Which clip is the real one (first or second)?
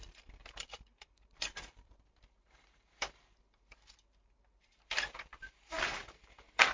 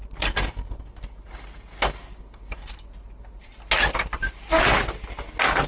second